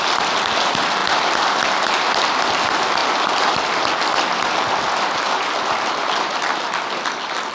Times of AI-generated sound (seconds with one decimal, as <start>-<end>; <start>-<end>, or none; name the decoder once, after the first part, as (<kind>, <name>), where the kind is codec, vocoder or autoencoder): none